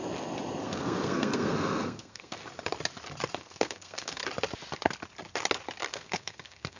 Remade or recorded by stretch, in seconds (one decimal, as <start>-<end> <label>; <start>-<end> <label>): 0.0-0.6 recorded; 0.6-2.4 remade; 2.4-3.4 recorded; 3.4-4.2 remade; 4.2-5.9 recorded; 5.9-6.8 remade